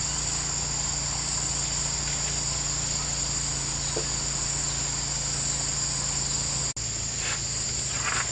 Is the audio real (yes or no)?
yes